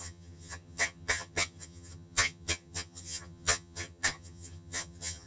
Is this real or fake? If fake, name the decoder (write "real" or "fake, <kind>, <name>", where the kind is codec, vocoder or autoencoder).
fake, vocoder, HiFi-GAN